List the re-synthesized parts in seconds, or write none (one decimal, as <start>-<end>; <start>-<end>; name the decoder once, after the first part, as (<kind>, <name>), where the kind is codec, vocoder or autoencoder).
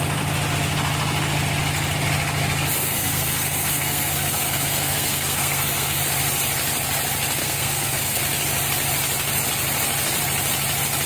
2.8-6.0 (codec, SNAC); 7.4-8.2